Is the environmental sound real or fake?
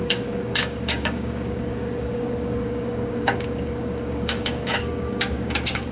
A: fake